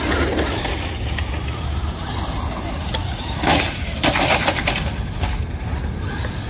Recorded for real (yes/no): yes